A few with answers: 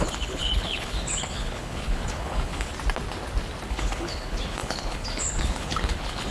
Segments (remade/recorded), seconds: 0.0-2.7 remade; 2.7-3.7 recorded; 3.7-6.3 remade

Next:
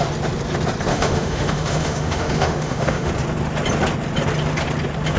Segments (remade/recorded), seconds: 0.0-0.9 recorded; 0.9-3.1 remade; 3.1-5.2 recorded

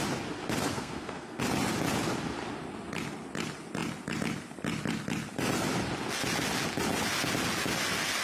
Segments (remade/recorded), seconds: 0.0-0.7 recorded; 0.7-1.4 remade; 1.4-8.2 recorded

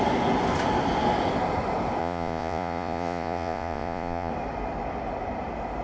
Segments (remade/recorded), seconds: 0.0-2.0 recorded; 2.0-4.3 remade; 4.3-5.8 recorded

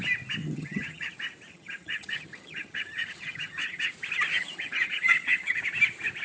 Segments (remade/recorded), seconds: 0.0-0.4 recorded; 0.4-1.1 remade; 1.1-1.5 recorded; 1.5-3.9 remade; 3.9-4.3 recorded; 4.3-5.6 remade; 5.6-6.2 recorded

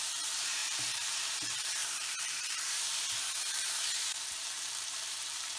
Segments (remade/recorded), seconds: 0.0-5.6 remade

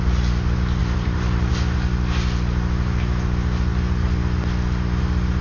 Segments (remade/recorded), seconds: 0.0-0.8 recorded; 0.8-1.5 remade; 1.5-5.4 recorded

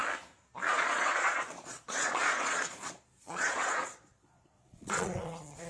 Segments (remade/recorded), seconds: 0.0-0.7 recorded; 0.7-5.7 remade